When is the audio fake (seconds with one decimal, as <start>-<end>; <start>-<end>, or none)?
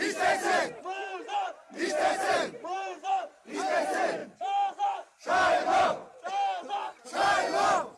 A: 1.1-3.7; 4.2-4.7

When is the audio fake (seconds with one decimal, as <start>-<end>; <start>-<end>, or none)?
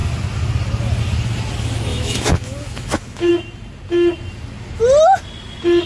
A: 1.9-3.3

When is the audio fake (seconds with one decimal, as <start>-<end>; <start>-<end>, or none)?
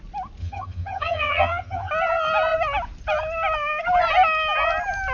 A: 0.4-1.9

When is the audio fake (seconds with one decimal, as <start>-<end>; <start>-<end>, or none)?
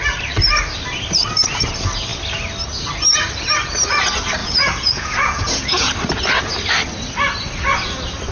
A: 4.4-5.9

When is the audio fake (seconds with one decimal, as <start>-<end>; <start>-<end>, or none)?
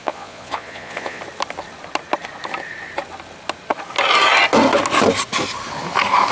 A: 0.0-1.2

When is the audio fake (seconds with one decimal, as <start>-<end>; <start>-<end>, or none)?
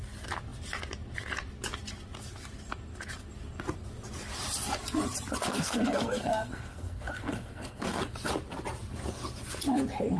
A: 5.5-8.0